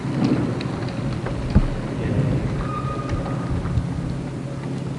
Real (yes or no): yes